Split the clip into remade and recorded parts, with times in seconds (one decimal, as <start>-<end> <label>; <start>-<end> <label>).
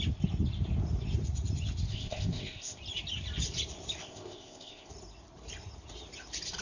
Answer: 0.0-1.9 recorded; 1.9-2.8 remade; 2.8-4.0 recorded; 4.0-4.9 remade; 4.9-6.6 recorded